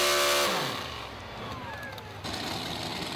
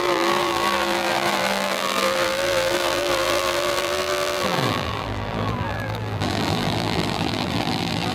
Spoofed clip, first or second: second